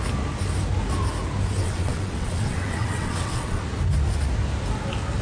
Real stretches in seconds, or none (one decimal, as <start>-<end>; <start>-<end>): 0.0-1.6; 3.6-5.2